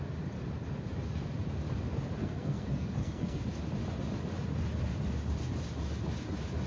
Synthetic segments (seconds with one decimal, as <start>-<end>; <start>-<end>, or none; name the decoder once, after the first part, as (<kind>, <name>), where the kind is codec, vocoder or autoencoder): 2.2-3.4 (codec, SNAC)